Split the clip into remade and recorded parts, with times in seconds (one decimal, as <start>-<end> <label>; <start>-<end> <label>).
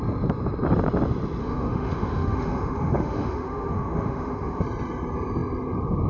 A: 0.0-1.4 recorded; 1.4-4.6 remade; 4.6-6.1 recorded